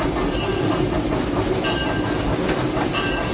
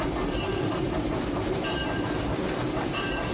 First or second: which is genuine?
first